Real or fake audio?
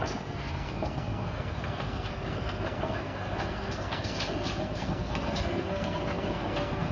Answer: fake